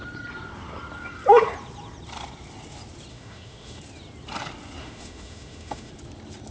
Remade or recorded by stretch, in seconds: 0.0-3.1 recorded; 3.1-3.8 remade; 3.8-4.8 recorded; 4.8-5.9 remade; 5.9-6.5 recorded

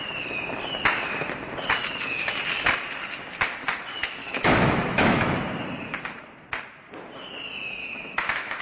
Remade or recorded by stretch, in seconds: 0.0-1.8 recorded; 1.8-2.3 remade; 2.3-4.2 recorded; 4.2-5.4 remade; 5.4-7.8 recorded; 7.8-8.6 remade